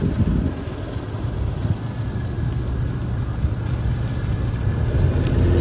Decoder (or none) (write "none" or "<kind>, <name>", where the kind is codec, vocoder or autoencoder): none